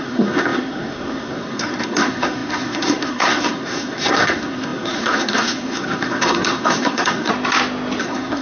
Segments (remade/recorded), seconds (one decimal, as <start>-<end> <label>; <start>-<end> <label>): 0.0-7.3 remade; 7.3-8.0 recorded; 8.0-8.4 remade

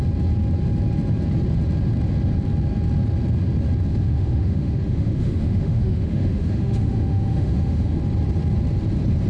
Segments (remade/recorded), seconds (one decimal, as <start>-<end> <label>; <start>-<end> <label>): 0.0-3.9 recorded; 3.9-8.0 remade; 8.0-9.3 recorded

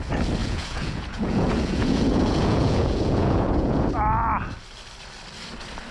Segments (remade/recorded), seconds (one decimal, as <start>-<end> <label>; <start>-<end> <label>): 0.0-0.4 recorded; 0.4-3.9 remade; 3.9-5.9 recorded